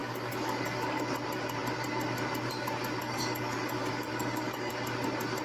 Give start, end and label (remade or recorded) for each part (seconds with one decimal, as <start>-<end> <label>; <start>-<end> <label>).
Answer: 0.0-1.0 remade; 1.0-3.0 recorded; 3.0-4.7 remade; 4.7-5.4 recorded